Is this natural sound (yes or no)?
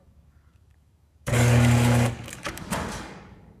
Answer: no